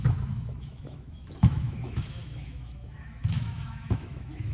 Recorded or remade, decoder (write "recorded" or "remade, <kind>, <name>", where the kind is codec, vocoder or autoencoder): remade, autoencoder, DAC-VAE